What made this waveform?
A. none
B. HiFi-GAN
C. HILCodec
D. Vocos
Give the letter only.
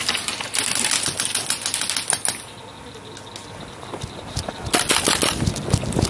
A